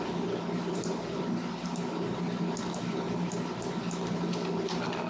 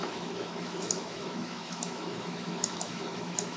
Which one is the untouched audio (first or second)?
first